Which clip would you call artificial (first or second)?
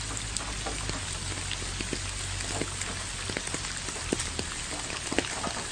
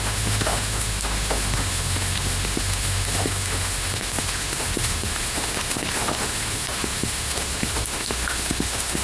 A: second